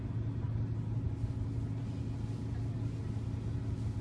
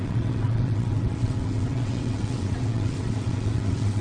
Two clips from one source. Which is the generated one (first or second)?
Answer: second